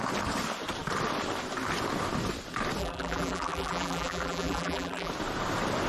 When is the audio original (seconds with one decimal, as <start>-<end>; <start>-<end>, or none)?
0.0-2.8; 5.1-5.9